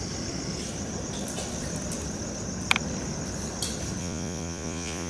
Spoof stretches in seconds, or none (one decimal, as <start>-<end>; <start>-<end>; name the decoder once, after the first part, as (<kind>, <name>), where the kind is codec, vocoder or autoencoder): 4.0-5.1 (vocoder, Vocos)